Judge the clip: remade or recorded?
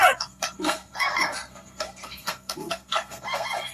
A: remade